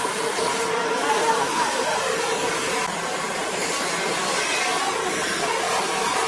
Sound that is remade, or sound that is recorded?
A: recorded